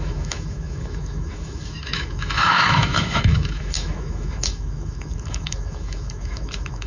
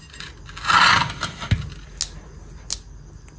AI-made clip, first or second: first